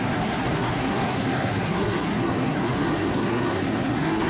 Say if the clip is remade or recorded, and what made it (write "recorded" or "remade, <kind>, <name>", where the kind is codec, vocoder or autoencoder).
remade, codec, SNAC